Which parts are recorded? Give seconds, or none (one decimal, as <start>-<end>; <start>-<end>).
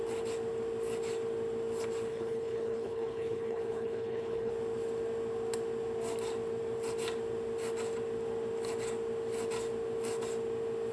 0.0-2.1; 4.5-10.9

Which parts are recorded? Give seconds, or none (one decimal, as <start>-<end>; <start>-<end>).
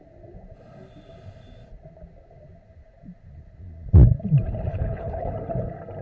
0.0-4.7; 5.3-6.0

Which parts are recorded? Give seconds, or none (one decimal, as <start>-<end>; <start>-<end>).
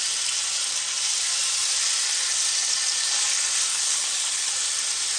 0.0-3.7; 4.5-5.2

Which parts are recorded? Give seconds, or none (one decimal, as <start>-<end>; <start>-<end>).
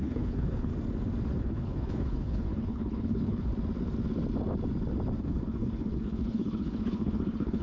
0.7-1.4; 3.5-5.2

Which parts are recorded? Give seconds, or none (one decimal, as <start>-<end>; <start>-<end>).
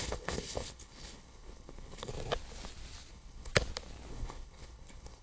2.1-3.1; 3.5-4.1